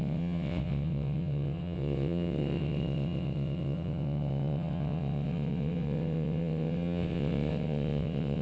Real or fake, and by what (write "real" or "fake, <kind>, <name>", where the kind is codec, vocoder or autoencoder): fake, vocoder, WaveNeXt